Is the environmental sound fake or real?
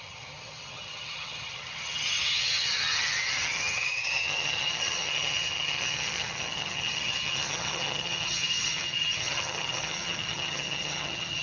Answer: fake